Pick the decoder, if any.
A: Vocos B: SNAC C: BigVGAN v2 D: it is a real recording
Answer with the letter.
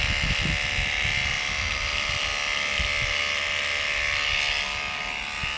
D